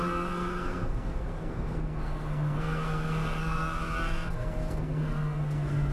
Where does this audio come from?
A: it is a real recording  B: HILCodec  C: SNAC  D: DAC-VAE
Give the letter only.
C